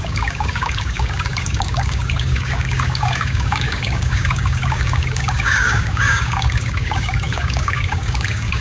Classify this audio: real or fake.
fake